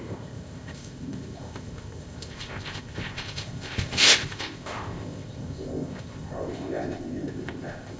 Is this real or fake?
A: fake